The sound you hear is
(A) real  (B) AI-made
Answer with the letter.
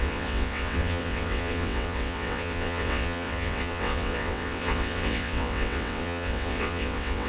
B